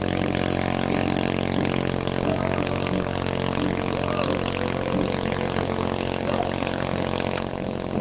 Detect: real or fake real